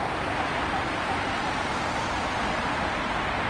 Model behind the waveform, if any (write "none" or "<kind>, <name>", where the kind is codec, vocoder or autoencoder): none